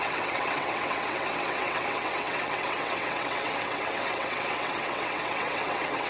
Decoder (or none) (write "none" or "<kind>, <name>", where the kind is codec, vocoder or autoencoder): vocoder, WaveNeXt